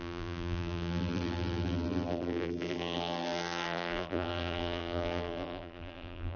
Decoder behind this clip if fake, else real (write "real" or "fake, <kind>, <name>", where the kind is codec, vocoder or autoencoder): fake, vocoder, BigVGAN v2